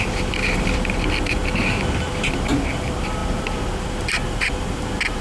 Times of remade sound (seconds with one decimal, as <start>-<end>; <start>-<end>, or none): 0.0-1.4; 2.3-5.2